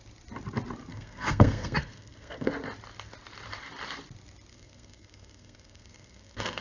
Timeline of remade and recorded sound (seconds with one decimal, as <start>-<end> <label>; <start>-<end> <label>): 0.0-0.9 recorded; 0.9-2.5 remade; 2.5-4.5 recorded; 4.5-6.6 remade